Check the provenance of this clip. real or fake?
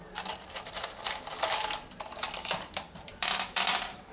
fake